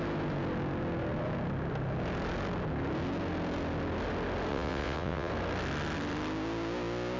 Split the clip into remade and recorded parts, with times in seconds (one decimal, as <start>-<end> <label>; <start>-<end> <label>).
0.0-4.5 recorded; 4.5-5.3 remade; 5.3-7.2 recorded